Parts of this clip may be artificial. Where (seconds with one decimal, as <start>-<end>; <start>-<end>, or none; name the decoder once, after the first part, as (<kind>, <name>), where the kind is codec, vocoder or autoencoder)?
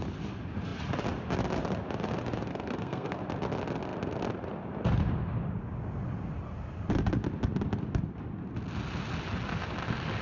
2.5-3.2 (codec, SNAC)